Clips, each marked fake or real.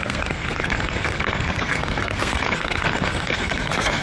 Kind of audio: fake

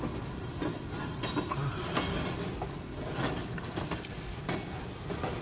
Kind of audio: real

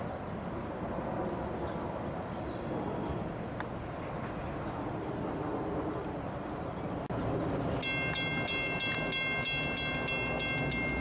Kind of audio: real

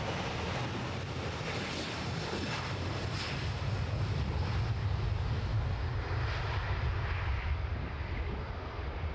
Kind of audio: real